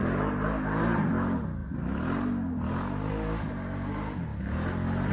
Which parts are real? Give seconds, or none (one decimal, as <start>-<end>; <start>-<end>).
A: 0.0-1.6; 3.1-5.1